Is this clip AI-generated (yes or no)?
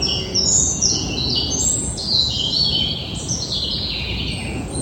yes